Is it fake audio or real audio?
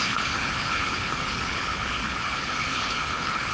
fake